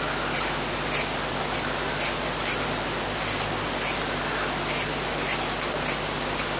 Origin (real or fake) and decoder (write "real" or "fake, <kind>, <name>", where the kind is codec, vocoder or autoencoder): real